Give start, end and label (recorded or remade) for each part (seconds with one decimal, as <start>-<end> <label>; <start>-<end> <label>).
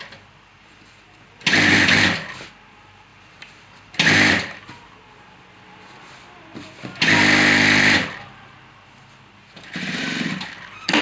0.0-3.1 recorded; 3.1-4.3 remade; 4.3-6.5 recorded; 6.5-8.4 remade; 8.4-11.0 recorded